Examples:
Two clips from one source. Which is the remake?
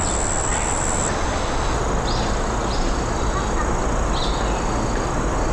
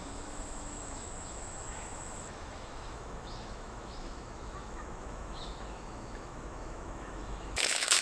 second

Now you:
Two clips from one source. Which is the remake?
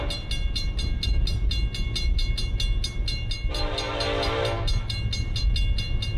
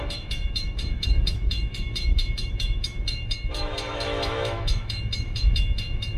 second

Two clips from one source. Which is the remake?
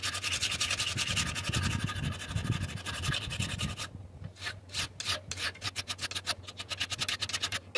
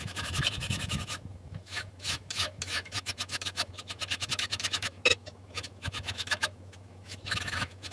second